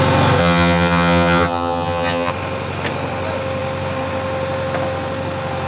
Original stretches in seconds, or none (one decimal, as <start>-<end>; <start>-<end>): 0.0-0.4; 2.3-5.7